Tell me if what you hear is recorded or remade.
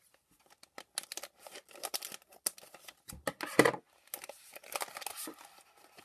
recorded